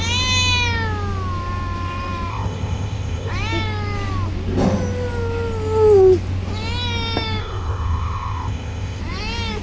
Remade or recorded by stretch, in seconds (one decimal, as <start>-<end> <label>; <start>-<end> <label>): 0.0-2.3 recorded; 2.3-3.3 remade; 3.3-7.4 recorded; 7.4-9.0 remade; 9.0-9.6 recorded